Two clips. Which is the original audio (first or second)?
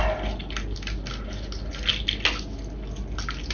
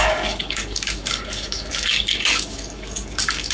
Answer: first